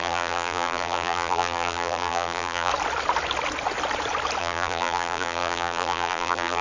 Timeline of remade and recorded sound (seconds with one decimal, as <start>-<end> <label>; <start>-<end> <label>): 0.0-2.7 remade; 2.7-4.4 recorded; 4.4-6.6 remade